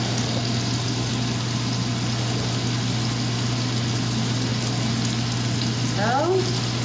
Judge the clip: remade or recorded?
recorded